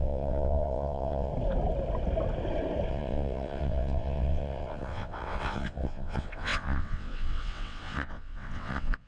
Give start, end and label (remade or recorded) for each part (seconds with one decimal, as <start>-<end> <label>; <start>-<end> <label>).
0.0-1.3 remade; 1.3-2.9 recorded; 2.9-9.1 remade